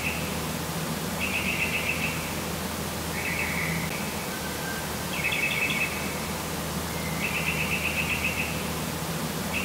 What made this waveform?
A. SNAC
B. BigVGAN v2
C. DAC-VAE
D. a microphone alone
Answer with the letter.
D